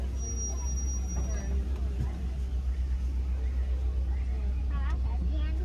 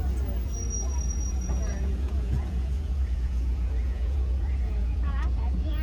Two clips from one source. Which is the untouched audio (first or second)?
first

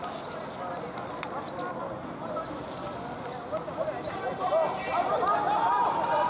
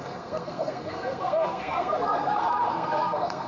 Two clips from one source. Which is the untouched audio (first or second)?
first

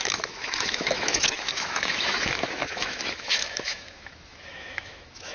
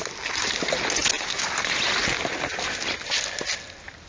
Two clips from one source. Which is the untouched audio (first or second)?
second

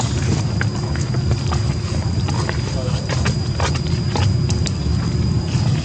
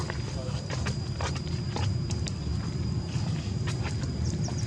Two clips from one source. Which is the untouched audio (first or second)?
first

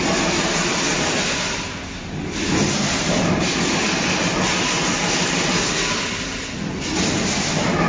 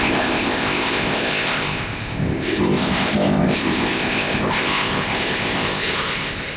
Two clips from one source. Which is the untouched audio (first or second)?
first